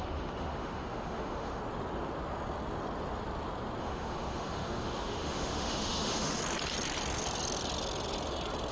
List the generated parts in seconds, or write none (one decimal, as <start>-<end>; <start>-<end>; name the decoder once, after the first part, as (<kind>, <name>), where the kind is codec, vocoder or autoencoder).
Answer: 0.0-1.6 (autoencoder, DAC-VAE); 3.8-6.4